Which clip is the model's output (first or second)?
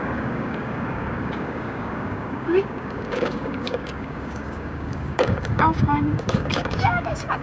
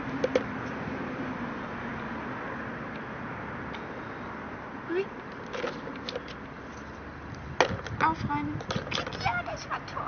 first